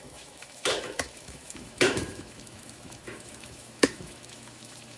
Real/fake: fake